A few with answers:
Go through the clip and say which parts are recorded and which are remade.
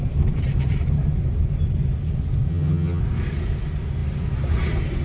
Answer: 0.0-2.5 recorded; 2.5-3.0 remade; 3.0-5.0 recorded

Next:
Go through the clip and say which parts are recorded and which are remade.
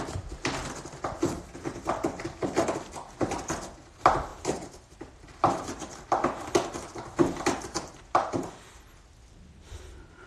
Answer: 0.0-4.3 recorded; 4.3-5.9 remade; 5.9-10.3 recorded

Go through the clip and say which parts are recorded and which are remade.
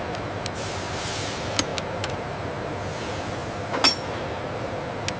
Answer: 0.0-5.2 recorded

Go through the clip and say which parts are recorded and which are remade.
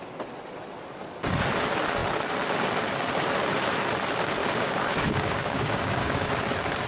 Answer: 0.0-4.4 recorded; 4.4-6.3 remade; 6.3-6.9 recorded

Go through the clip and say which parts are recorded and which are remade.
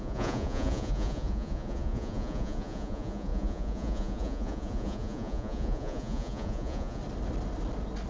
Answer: 0.0-7.0 remade; 7.0-8.1 recorded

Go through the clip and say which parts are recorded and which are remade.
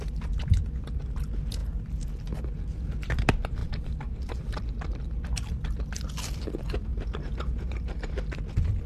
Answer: 0.0-3.6 recorded; 3.6-4.6 remade; 4.6-6.9 recorded; 6.9-8.1 remade; 8.1-8.9 recorded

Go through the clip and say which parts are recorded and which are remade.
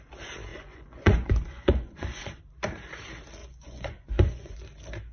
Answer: 0.0-0.5 recorded; 0.5-2.4 remade; 2.4-3.4 recorded; 3.4-4.6 remade; 4.6-5.1 recorded